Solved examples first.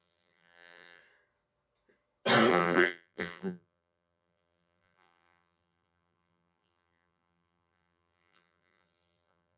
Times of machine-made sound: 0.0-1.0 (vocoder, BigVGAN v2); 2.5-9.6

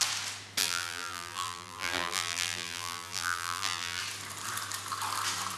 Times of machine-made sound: 0.6-4.0 (vocoder, BigVGAN v2)

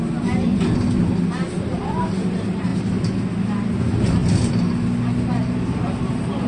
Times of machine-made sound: 0.0-0.5 (vocoder, BigVGAN v2); 1.3-2.7; 3.8-4.2; 5.6-6.5

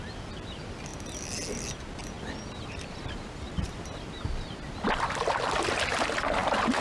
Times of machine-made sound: none

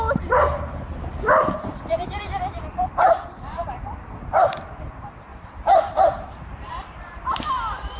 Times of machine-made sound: 1.4-4.7 (vocoder, BigVGAN v2); 5.3-6.7